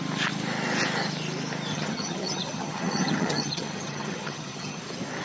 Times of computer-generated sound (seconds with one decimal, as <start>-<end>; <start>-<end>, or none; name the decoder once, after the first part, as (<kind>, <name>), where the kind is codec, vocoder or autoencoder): 1.7-4.8 (vocoder, HiFi-GAN)